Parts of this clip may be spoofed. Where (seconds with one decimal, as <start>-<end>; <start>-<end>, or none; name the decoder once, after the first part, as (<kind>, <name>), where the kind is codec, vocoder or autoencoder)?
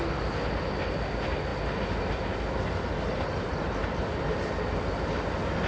none